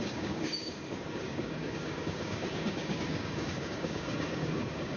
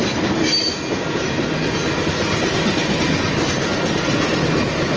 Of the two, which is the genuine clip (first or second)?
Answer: second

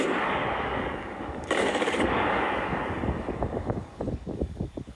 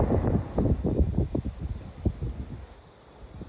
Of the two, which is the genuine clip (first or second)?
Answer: second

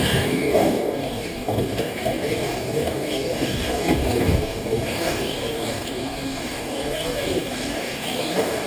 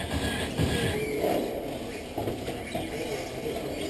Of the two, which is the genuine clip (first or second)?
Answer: second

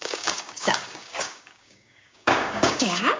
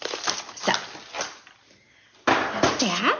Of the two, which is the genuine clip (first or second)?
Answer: second